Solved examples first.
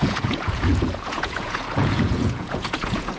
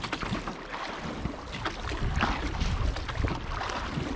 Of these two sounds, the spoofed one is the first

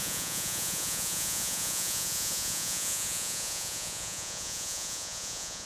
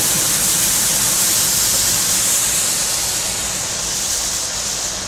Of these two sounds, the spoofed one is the first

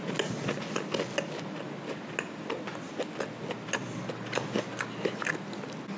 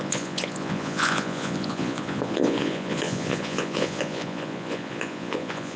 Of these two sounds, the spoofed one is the second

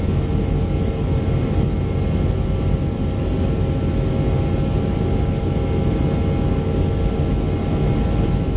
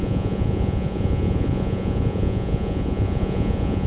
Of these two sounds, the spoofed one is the second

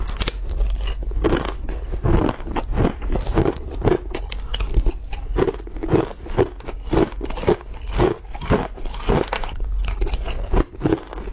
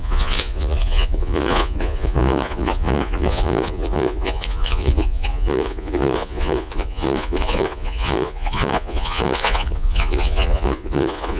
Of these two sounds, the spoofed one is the second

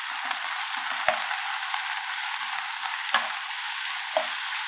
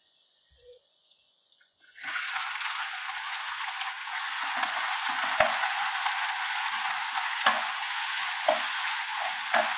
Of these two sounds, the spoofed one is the second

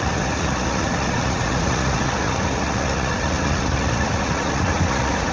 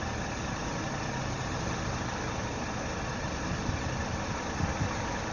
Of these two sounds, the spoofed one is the first